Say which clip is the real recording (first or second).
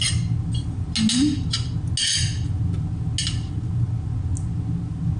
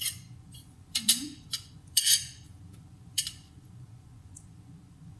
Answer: first